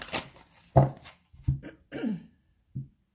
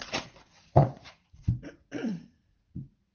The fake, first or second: second